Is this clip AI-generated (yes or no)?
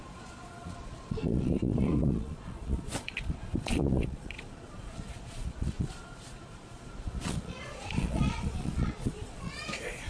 yes